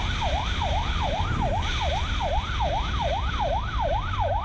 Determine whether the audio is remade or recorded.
remade